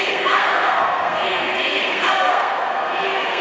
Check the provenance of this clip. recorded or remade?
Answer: remade